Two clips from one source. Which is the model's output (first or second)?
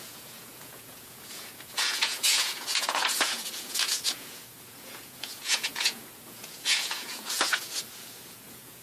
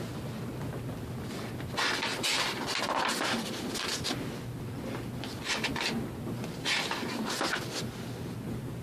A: first